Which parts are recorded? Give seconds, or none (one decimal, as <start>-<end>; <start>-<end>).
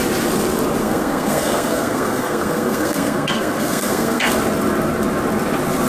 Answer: 0.0-0.8; 4.3-5.9